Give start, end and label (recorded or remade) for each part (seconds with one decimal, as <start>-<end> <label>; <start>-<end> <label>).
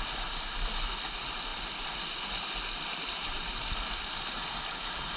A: 0.0-5.2 recorded